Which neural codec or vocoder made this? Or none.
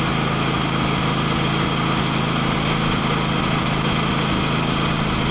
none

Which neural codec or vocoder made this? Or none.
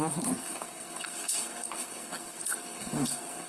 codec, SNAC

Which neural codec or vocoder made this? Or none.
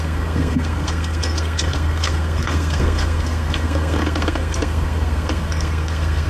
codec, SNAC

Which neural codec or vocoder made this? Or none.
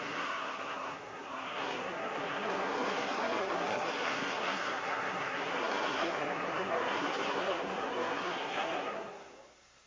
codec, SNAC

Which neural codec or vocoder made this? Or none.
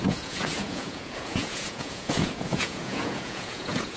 vocoder, Vocos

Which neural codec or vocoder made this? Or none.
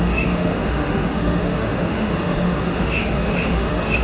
autoencoder, DAC-VAE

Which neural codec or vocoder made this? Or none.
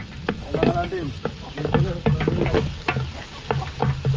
none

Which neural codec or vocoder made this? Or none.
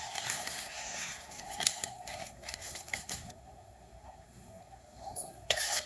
codec, SNAC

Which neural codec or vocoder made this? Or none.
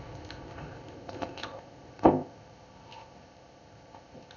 codec, ZipCodec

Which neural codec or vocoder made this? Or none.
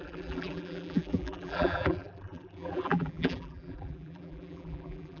vocoder, BigVGAN v2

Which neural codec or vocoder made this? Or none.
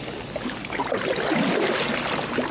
none